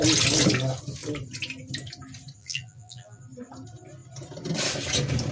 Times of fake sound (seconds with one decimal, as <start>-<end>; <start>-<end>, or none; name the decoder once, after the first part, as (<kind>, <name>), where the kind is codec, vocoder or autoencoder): 2.4-3.2 (vocoder, BigVGAN v2)